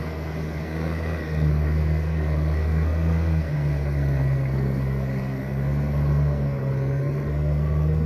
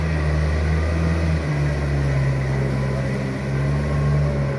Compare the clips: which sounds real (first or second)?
second